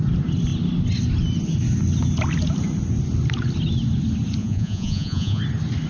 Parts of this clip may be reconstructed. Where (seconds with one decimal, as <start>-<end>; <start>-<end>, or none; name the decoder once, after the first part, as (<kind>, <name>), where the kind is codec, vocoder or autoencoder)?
4.4-5.4 (vocoder, Vocos)